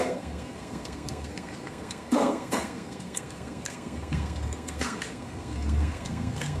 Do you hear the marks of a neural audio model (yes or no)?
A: yes